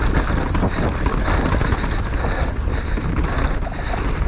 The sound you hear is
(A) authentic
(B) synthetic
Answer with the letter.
A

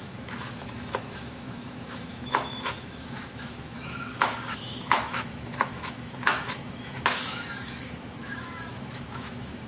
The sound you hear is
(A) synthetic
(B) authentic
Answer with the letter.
A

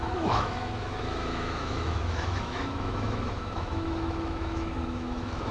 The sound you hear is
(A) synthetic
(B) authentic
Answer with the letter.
A